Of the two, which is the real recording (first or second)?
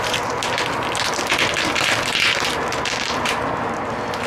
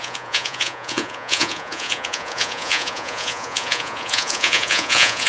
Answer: first